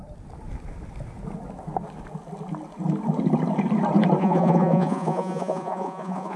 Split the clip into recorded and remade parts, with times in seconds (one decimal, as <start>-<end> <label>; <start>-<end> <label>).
0.0-4.2 recorded; 4.2-6.4 remade